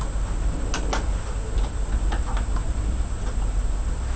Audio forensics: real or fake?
real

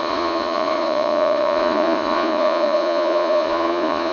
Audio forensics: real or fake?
fake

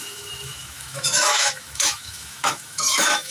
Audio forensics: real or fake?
fake